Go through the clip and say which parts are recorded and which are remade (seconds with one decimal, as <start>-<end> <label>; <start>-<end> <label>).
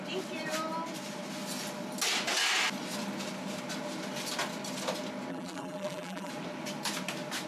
0.0-5.3 recorded; 5.3-6.3 remade; 6.3-7.5 recorded